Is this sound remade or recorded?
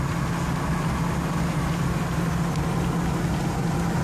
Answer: recorded